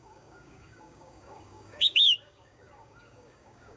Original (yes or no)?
no